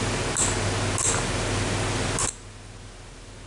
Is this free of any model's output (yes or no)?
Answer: yes